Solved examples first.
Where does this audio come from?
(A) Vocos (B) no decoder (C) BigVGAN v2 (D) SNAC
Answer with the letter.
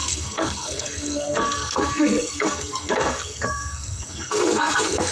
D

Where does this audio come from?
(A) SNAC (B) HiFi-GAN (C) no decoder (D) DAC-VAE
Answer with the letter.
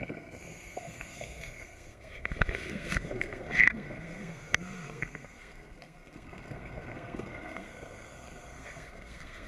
A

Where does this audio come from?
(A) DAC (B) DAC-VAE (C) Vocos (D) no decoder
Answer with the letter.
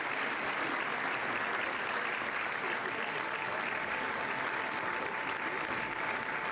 D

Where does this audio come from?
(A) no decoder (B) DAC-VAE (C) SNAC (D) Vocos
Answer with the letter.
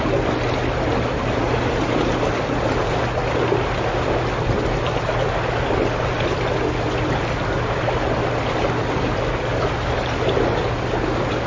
A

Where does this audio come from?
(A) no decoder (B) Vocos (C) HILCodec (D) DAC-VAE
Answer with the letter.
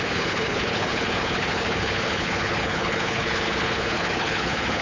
C